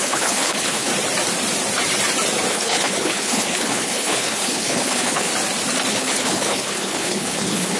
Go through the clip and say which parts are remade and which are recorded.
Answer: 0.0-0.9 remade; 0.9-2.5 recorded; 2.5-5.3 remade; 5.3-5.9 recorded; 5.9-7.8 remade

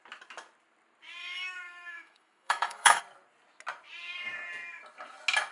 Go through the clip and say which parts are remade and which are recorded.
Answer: 0.0-1.2 recorded; 1.2-3.0 remade; 3.0-5.5 recorded

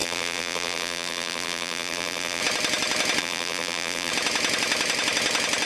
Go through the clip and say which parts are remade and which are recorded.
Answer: 0.0-2.4 remade; 2.4-3.2 recorded; 3.2-4.1 remade; 4.1-5.7 recorded

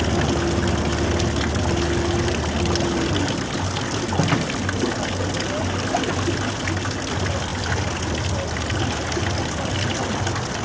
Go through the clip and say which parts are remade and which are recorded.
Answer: 0.0-10.6 recorded

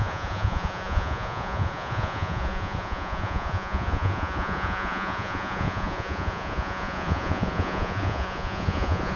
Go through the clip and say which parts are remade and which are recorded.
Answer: 0.0-9.2 remade

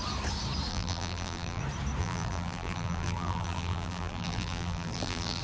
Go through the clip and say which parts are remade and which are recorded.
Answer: 0.0-0.7 recorded; 0.7-1.6 remade; 1.6-2.0 recorded; 2.0-5.4 remade

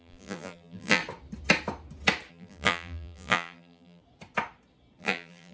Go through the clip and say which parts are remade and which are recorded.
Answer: 0.0-1.0 remade; 1.0-2.3 recorded; 2.3-4.0 remade; 4.0-5.0 recorded; 5.0-5.5 remade

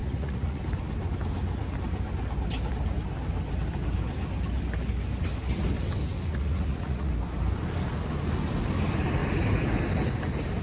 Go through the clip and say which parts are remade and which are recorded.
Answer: 0.0-0.6 remade; 0.6-6.3 recorded; 6.3-7.1 remade; 7.1-10.6 recorded